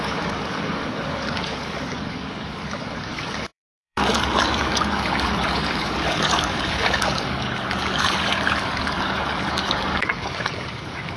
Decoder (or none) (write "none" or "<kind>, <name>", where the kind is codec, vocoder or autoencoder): codec, DAC